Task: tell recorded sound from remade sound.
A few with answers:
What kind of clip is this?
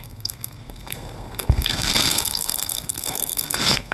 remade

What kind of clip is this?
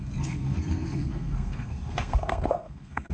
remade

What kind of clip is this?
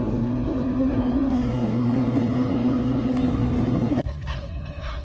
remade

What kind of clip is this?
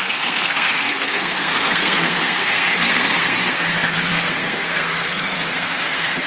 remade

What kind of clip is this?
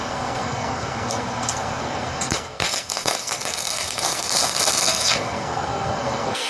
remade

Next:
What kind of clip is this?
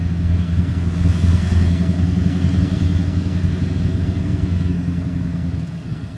remade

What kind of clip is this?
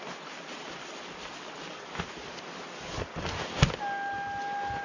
recorded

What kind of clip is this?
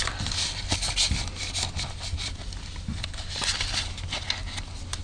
recorded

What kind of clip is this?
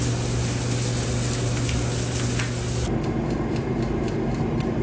recorded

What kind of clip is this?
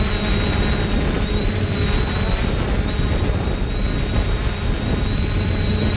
recorded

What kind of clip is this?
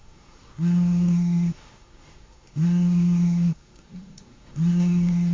remade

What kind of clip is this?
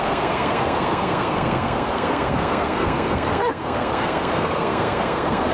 remade